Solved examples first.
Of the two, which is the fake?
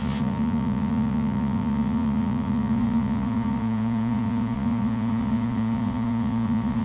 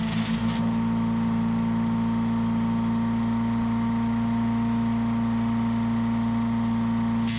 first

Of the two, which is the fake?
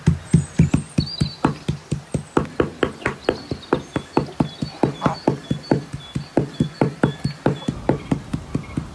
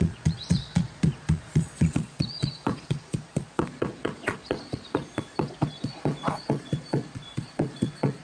second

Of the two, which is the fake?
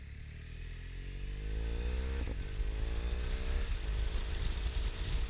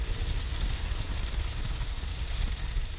second